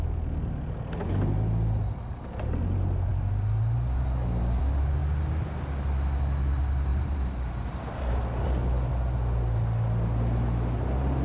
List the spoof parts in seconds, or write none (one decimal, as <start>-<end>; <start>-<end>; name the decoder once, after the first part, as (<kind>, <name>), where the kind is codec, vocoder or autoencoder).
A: 6.9-8.9 (vocoder, BigVGAN v2)